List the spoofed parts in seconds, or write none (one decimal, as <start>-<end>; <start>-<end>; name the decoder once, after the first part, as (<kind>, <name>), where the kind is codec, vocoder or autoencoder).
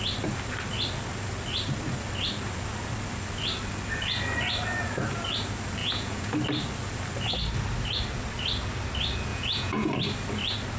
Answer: 5.8-6.3 (vocoder, Vocos); 9.3-9.9